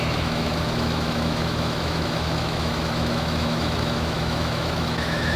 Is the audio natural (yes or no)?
no